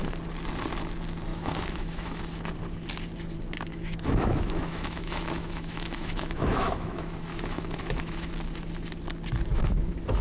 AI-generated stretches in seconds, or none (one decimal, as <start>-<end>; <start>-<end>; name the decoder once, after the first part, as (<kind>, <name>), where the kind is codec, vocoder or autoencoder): 1.3-2.2 (autoencoder, DAC-VAE); 3.7-8.3; 9.5-10.2